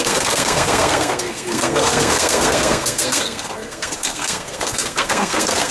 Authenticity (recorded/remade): remade